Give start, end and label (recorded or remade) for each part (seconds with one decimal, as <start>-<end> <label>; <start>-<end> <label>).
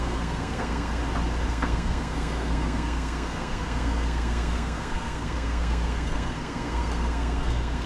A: 0.0-1.0 remade; 1.0-1.5 recorded; 1.5-7.9 remade